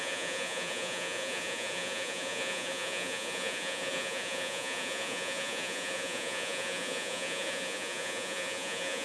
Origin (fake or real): fake